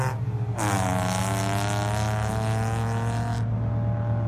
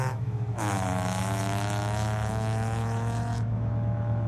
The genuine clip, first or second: first